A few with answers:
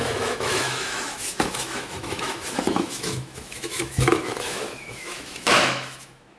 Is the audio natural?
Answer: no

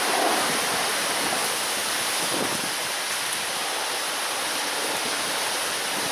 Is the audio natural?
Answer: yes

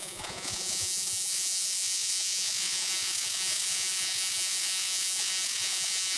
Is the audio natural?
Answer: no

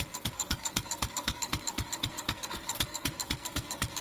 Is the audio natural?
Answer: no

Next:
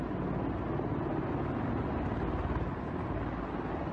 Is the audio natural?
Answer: yes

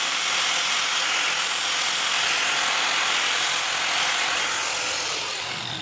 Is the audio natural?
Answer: yes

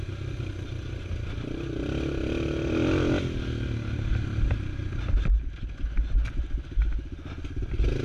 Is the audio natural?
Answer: yes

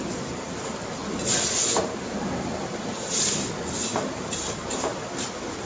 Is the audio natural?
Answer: yes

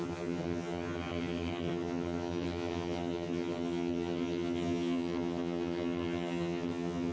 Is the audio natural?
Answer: no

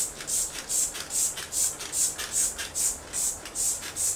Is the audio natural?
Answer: yes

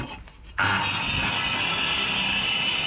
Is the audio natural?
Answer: yes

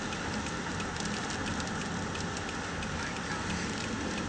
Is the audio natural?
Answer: yes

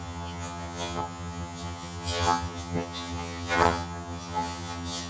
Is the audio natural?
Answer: no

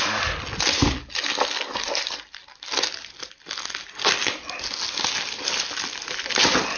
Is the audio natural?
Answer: yes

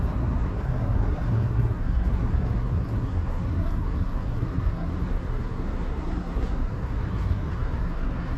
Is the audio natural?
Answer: no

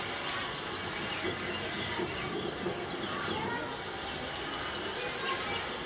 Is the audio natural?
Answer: yes